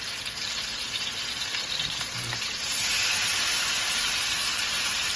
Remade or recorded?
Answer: remade